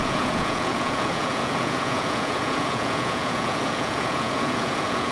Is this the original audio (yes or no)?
no